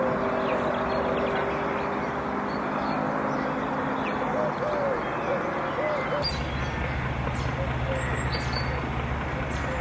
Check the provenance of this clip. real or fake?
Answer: fake